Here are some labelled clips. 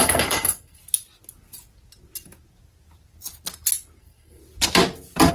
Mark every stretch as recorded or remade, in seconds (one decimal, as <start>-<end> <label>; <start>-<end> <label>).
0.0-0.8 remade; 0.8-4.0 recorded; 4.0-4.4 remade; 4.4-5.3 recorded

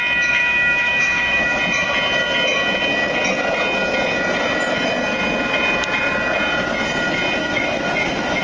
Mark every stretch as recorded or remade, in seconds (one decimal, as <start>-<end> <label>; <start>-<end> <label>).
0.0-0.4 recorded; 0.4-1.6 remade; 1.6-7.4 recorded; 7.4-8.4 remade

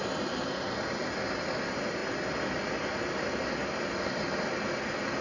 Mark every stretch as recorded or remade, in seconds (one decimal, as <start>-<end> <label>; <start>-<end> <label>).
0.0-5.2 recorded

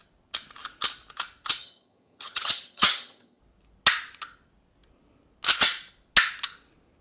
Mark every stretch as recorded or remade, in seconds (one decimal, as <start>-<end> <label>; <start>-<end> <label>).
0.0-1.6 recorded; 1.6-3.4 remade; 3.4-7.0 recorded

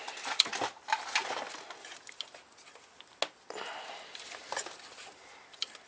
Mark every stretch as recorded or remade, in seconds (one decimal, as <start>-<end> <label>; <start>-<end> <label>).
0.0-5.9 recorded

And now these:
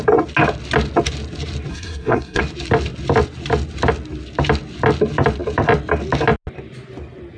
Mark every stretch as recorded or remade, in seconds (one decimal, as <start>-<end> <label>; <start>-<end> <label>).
0.0-1.7 recorded; 1.7-2.4 remade; 2.4-7.4 recorded

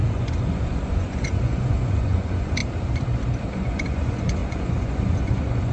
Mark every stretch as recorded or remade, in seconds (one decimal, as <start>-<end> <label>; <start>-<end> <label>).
0.0-2.6 remade; 2.6-3.5 recorded; 3.5-5.7 remade

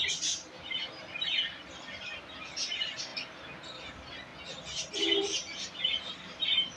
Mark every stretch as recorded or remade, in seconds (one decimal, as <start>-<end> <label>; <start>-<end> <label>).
0.0-3.1 remade; 3.1-3.9 recorded; 3.9-4.3 remade; 4.3-4.9 recorded; 4.9-6.8 remade